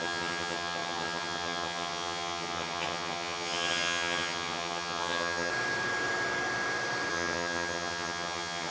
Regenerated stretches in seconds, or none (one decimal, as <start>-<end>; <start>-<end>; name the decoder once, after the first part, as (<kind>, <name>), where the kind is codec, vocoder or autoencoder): 0.0-5.5 (vocoder, HiFi-GAN); 7.1-8.7